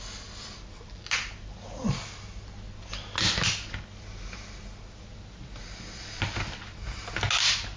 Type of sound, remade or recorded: recorded